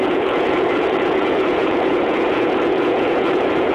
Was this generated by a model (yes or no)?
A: yes